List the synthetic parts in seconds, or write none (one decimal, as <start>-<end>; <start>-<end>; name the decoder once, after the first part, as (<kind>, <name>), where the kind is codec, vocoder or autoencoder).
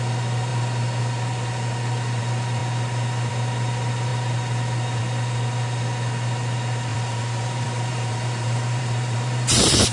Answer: 6.9-9.9 (vocoder, BigVGAN v2)